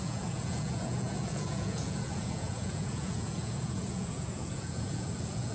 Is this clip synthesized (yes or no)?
yes